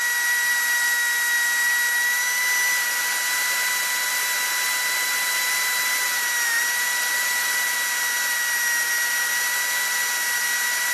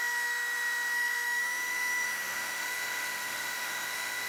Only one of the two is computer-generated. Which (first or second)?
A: second